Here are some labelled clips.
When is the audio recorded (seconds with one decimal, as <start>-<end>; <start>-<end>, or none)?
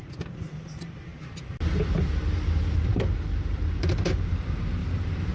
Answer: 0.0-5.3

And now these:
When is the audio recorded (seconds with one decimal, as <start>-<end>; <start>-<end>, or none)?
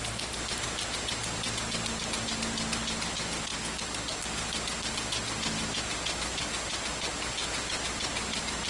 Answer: 0.0-8.7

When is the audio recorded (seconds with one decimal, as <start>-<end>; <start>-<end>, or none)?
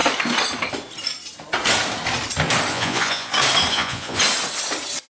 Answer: 0.0-2.7; 3.3-3.7; 4.2-5.1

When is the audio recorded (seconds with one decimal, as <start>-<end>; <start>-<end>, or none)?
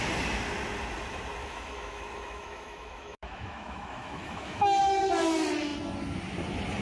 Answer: 0.0-1.4; 4.8-6.8